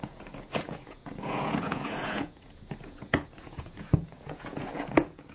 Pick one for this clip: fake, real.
fake